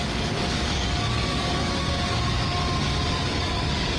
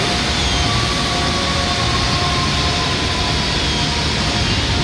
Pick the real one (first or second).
second